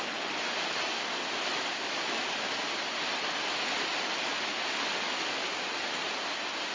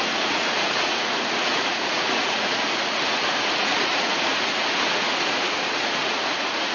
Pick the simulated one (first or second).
second